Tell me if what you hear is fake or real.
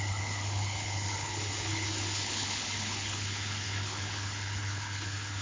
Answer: fake